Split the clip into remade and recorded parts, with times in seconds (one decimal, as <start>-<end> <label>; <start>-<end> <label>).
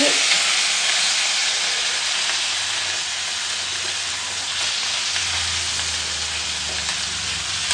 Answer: 0.0-7.7 recorded